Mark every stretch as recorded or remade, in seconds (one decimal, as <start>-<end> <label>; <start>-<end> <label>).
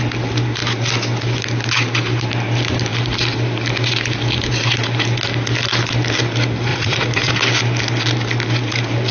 0.0-6.7 recorded; 6.7-7.3 remade; 7.3-9.1 recorded